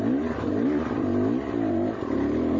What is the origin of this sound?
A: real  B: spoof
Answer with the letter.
A